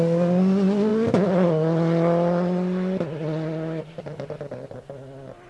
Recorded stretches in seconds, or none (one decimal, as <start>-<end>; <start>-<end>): 0.0-5.5